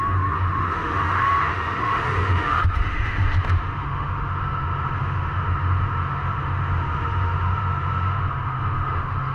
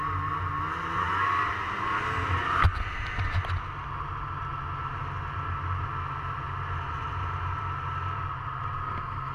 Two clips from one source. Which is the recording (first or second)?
second